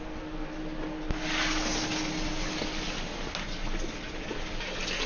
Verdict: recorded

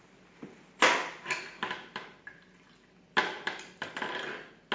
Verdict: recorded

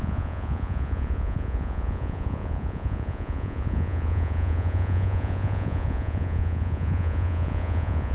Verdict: remade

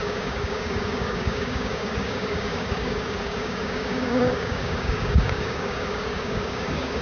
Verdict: remade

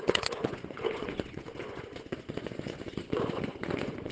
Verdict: remade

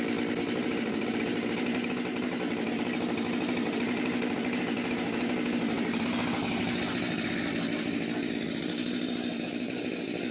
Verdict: recorded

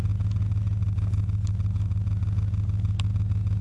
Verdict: recorded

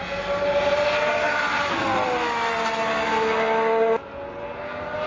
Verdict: recorded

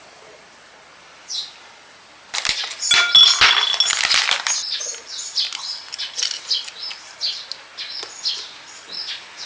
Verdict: recorded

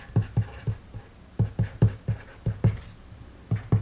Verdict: recorded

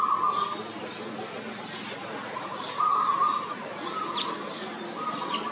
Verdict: recorded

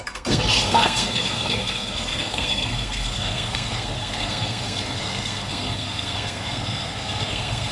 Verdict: remade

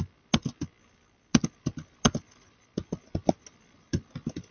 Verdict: recorded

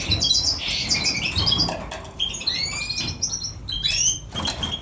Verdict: recorded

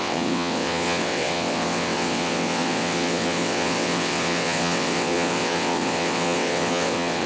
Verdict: remade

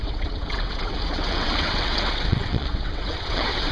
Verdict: remade